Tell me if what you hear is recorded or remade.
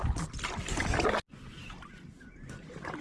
recorded